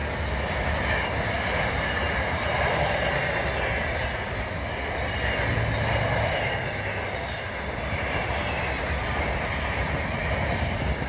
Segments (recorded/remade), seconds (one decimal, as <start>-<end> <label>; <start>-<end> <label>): 0.0-11.1 recorded